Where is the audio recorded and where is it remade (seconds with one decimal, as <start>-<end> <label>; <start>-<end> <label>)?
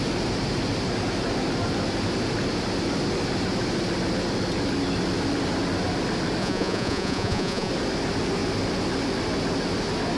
0.0-6.4 recorded; 6.4-7.7 remade; 7.7-10.2 recorded